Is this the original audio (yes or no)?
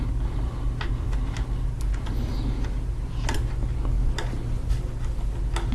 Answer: yes